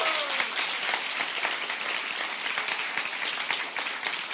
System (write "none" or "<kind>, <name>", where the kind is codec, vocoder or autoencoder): none